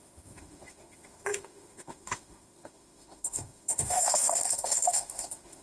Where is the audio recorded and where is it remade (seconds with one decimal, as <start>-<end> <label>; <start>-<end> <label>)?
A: 0.0-5.6 remade